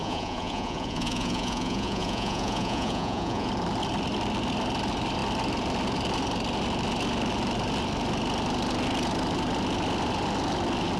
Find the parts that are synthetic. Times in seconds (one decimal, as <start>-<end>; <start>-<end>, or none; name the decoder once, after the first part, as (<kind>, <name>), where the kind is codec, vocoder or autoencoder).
0.0-3.5 (vocoder, Vocos)